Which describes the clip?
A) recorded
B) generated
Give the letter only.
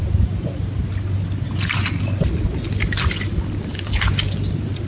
A